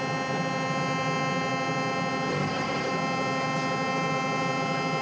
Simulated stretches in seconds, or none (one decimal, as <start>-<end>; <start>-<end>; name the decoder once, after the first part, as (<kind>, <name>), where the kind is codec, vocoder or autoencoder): 2.3-2.9 (codec, ZipCodec)